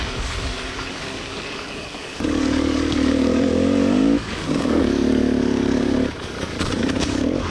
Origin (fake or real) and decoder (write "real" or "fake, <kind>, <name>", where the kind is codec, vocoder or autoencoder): fake, codec, DAC